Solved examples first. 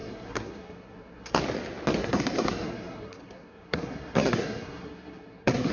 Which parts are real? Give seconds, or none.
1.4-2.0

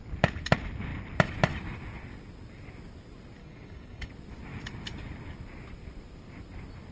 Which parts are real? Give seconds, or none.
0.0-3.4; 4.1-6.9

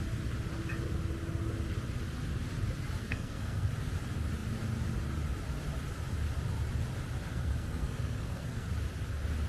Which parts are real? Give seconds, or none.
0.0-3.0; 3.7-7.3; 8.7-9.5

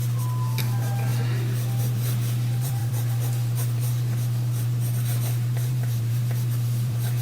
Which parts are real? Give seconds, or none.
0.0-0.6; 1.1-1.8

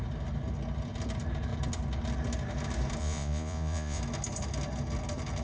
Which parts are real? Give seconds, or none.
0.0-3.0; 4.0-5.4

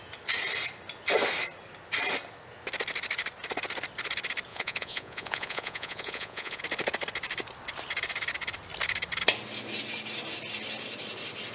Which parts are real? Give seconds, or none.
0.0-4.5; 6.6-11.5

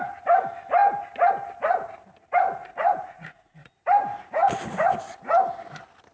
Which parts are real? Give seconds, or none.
0.0-2.6; 3.7-6.1